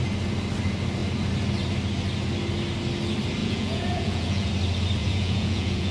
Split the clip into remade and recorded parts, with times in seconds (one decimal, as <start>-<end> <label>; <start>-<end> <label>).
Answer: 0.0-3.4 recorded; 3.4-4.5 remade; 4.5-5.0 recorded; 5.0-5.9 remade